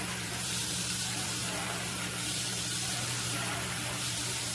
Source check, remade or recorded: remade